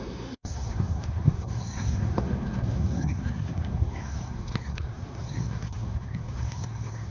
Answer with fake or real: fake